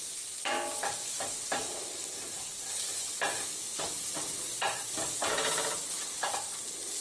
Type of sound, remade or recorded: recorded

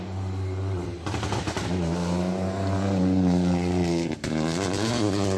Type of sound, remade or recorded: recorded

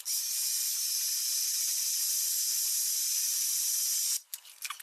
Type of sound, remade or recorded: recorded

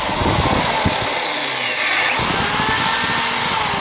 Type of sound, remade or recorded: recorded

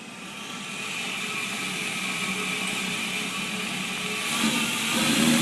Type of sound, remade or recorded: recorded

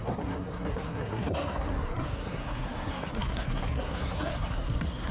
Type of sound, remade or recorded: remade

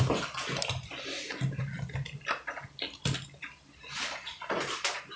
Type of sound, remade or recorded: recorded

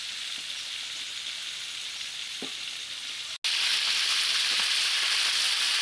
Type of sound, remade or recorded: recorded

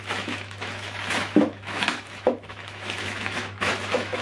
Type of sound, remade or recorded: remade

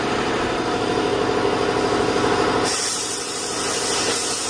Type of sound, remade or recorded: recorded